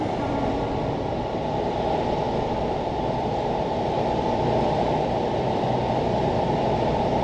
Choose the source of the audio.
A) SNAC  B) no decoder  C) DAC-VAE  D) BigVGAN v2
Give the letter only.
D